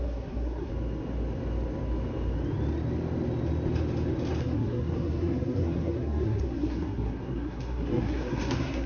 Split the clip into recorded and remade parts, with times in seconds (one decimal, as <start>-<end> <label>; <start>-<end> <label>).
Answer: 0.0-0.7 remade; 0.7-4.4 recorded; 4.4-8.9 remade